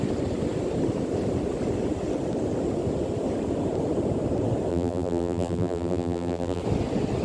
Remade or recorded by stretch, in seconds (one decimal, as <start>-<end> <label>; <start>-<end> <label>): 0.0-4.7 recorded; 4.7-6.6 remade; 6.6-7.2 recorded